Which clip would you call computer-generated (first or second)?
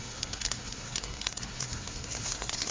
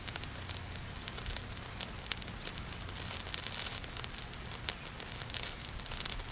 first